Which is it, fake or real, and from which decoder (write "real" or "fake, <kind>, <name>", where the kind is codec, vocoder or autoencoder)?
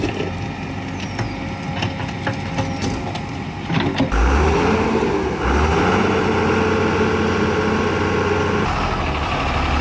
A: real